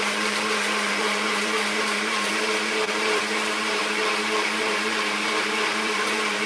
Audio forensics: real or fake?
fake